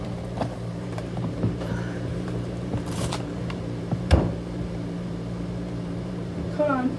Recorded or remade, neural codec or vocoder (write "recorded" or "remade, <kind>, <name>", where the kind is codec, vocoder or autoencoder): remade, vocoder, BigVGAN v2